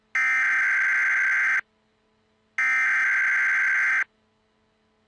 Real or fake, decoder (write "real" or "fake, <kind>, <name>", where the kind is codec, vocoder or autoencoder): real